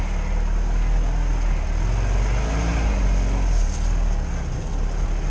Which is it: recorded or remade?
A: recorded